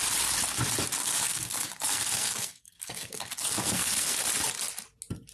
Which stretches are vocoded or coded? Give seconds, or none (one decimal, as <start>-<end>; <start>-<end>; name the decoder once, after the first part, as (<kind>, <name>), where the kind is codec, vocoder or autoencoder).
1.0-4.2 (codec, SNAC)